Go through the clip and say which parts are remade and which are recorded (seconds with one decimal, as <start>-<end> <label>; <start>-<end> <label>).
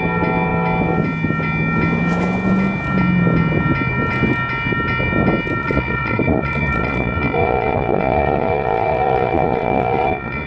0.0-5.6 recorded; 5.6-10.5 remade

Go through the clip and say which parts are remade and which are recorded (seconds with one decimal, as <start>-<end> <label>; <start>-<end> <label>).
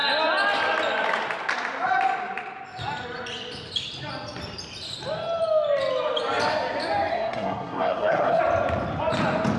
0.0-7.1 recorded; 7.1-8.4 remade; 8.4-9.6 recorded